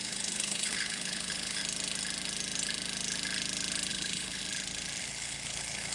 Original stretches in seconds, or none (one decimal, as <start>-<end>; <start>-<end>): 1.6-3.9; 4.4-5.0